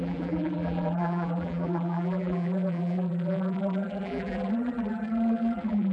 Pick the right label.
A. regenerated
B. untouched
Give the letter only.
A